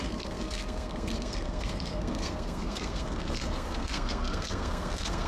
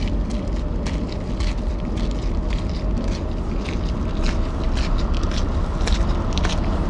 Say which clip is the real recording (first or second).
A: second